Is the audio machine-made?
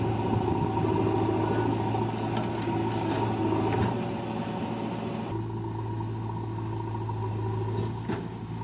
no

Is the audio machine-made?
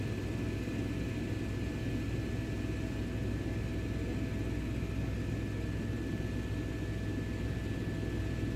no